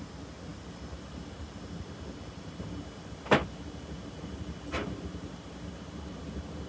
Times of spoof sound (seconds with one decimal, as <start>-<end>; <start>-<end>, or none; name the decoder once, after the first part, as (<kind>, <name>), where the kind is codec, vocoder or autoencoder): none